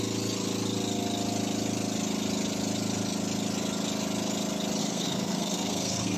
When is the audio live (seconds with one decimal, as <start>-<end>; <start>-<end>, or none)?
0.0-4.8